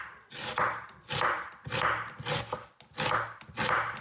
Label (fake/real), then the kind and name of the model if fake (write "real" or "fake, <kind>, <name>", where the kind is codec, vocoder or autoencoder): real